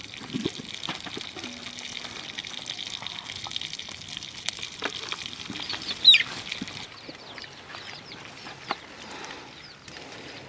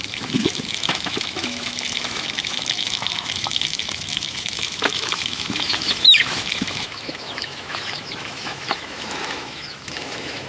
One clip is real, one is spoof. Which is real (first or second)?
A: first